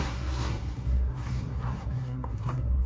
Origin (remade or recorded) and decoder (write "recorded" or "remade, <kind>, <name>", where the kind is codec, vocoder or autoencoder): remade, codec, SNAC